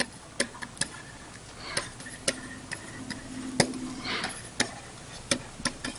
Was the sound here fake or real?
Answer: real